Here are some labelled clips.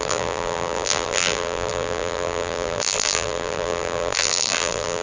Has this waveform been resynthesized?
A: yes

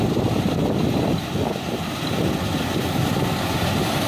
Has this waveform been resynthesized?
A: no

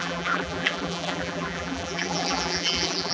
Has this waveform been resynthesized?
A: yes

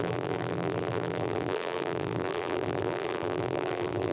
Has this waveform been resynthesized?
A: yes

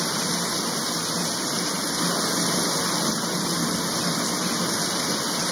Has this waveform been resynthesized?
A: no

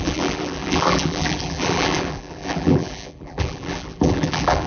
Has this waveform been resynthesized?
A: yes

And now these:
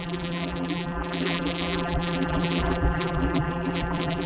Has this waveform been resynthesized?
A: yes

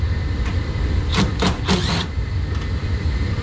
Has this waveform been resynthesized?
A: yes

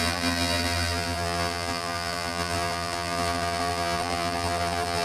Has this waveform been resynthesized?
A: yes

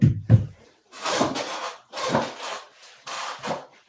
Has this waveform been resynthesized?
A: yes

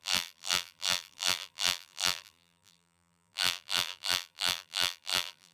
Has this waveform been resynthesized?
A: yes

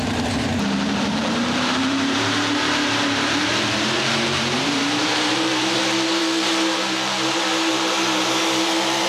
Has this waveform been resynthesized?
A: yes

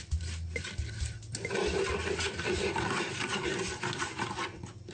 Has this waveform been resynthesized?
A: no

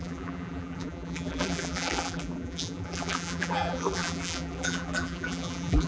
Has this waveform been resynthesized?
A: yes